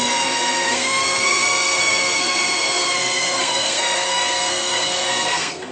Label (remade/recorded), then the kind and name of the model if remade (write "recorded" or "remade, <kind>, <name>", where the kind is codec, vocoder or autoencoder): remade, codec, SNAC